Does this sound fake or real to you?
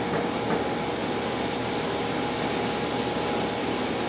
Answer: real